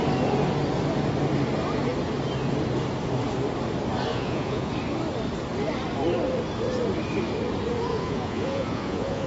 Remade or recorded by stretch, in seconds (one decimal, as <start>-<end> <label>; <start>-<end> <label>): 0.0-4.1 recorded; 4.1-4.7 remade; 4.7-7.9 recorded; 7.9-9.3 remade